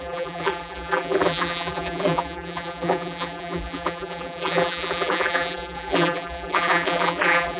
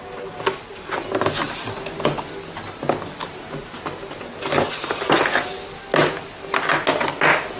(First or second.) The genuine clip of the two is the second